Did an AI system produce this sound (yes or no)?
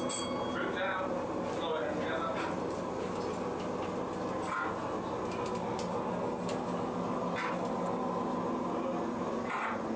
no